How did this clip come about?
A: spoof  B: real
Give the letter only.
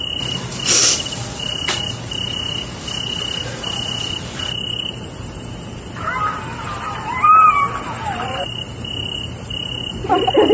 B